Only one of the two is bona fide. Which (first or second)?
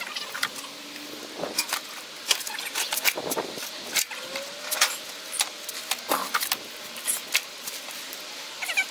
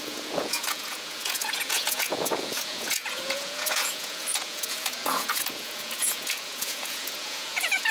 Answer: first